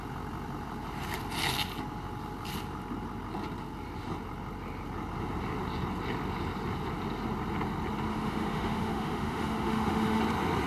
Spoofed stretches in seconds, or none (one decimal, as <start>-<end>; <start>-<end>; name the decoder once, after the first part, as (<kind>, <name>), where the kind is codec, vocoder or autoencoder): 8.1-10.2 (autoencoder, DAC-VAE)